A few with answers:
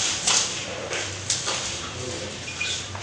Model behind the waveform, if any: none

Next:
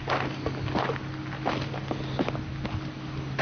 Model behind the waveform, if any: none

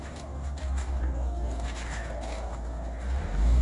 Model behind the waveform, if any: codec, DAC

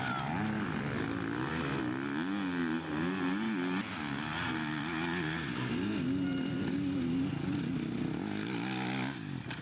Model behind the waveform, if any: none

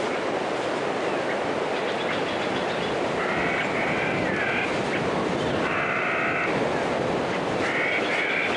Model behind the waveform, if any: none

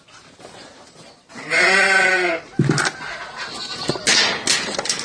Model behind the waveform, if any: none